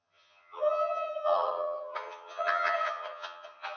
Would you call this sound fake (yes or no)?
yes